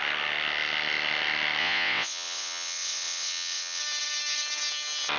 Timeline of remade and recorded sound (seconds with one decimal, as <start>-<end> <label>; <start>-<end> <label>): 0.0-1.6 recorded; 1.6-3.8 remade; 3.8-5.2 recorded